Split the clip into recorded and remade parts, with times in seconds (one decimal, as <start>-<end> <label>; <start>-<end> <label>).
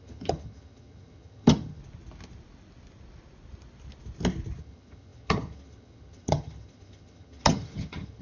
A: 0.0-1.8 remade; 1.8-4.6 recorded; 4.6-8.2 remade